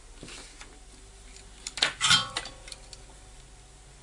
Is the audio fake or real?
real